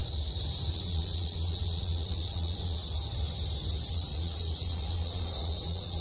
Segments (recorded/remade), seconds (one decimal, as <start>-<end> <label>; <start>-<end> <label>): 0.0-0.7 recorded; 0.7-2.9 remade; 2.9-3.9 recorded; 3.9-6.0 remade

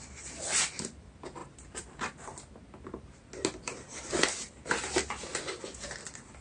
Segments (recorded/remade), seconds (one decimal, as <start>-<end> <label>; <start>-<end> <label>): 0.0-6.4 recorded

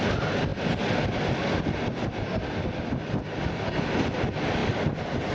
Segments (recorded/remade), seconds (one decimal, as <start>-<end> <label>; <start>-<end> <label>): 0.0-5.3 recorded